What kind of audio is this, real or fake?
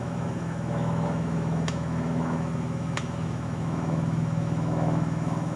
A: fake